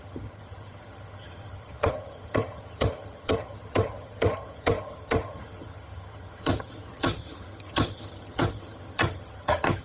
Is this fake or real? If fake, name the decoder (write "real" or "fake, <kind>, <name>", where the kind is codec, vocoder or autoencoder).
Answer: fake, vocoder, HiFi-GAN